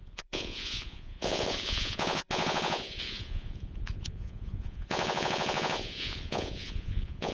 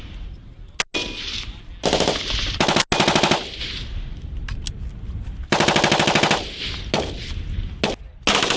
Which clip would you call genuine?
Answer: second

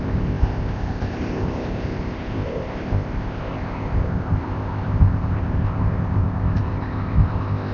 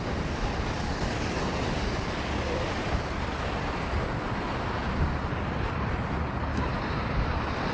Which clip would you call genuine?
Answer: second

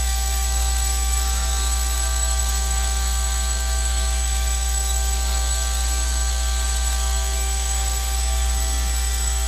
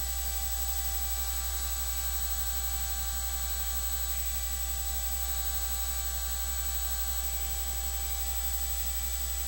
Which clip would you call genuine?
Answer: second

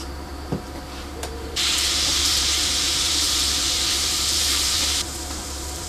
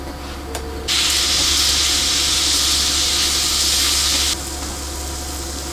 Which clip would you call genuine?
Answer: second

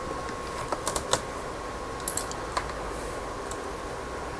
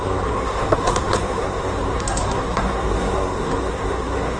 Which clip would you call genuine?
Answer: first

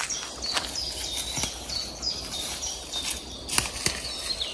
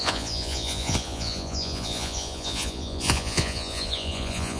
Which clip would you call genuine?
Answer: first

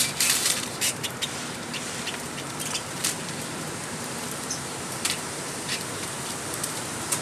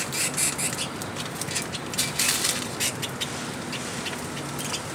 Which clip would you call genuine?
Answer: second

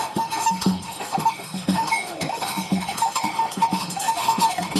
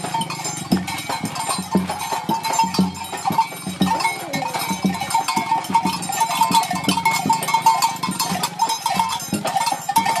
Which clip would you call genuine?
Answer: second